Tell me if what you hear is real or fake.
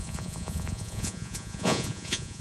fake